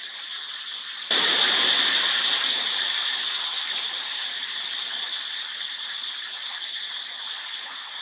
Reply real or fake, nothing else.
real